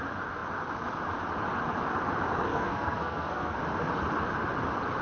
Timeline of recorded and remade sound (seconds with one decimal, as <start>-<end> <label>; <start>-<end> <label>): 0.0-2.5 recorded; 2.5-3.6 remade; 3.6-5.0 recorded